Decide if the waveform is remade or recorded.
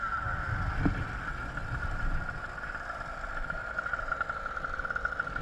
recorded